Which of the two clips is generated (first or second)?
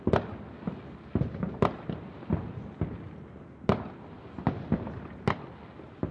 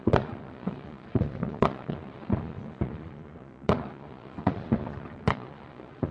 second